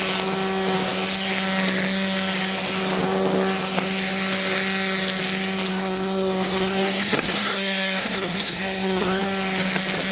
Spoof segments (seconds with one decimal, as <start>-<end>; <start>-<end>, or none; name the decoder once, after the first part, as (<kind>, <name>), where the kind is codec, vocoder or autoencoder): 5.7-9.2 (codec, SNAC)